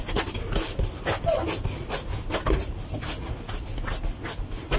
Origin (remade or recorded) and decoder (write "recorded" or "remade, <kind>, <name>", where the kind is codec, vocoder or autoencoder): recorded